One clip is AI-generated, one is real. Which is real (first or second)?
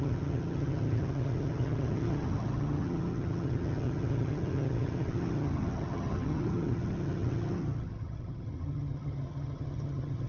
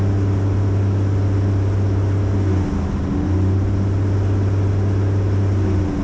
second